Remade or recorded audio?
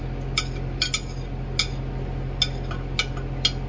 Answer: recorded